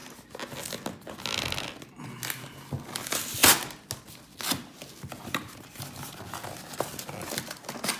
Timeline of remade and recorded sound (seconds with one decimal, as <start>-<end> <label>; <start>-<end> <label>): 0.0-8.0 recorded